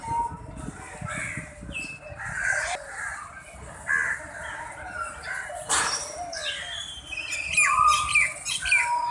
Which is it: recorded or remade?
recorded